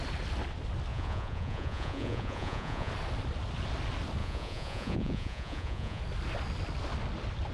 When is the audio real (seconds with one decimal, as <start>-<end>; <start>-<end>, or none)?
0.0-0.9; 2.9-4.2; 6.0-7.5